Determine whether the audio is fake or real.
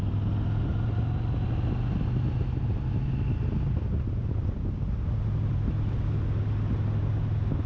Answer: real